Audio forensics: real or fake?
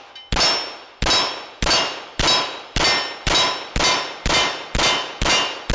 real